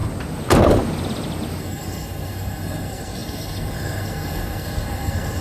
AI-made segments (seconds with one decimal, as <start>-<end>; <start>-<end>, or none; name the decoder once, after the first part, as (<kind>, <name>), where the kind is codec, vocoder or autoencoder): 1.6-5.4 (codec, SNAC)